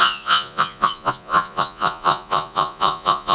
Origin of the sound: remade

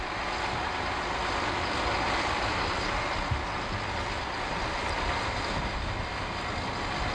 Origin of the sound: recorded